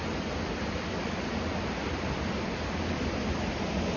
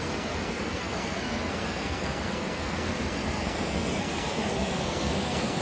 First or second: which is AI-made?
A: second